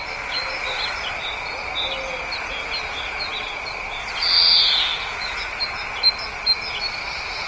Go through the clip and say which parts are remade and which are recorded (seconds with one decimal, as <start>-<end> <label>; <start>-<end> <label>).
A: 0.0-7.5 recorded